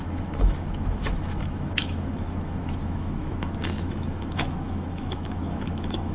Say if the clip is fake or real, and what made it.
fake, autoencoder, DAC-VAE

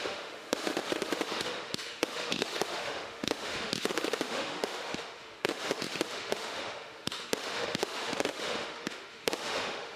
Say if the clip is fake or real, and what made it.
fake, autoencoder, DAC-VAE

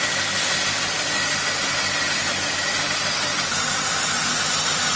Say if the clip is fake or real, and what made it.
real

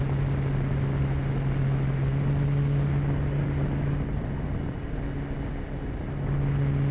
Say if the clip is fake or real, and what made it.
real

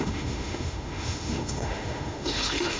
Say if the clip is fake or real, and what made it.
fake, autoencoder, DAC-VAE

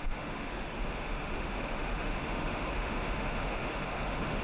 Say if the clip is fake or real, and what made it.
fake, autoencoder, DAC-VAE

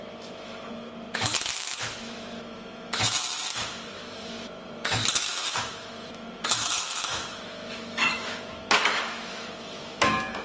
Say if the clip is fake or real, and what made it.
fake, autoencoder, DAC-VAE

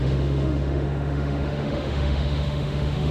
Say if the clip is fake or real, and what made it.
fake, autoencoder, DAC-VAE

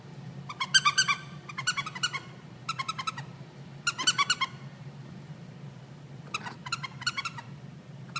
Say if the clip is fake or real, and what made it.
real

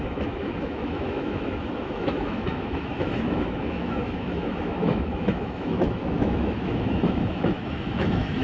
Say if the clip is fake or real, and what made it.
fake, autoencoder, DAC-VAE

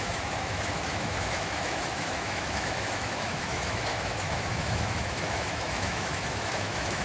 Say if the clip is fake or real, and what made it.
fake, autoencoder, DAC-VAE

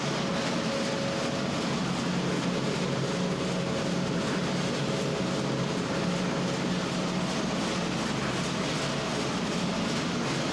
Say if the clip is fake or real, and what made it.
real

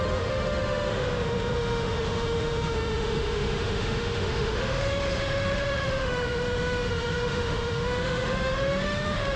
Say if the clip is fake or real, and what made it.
fake, autoencoder, DAC-VAE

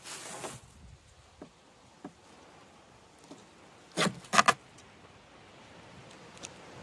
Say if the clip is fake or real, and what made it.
real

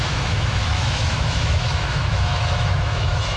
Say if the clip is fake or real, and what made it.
fake, autoencoder, DAC-VAE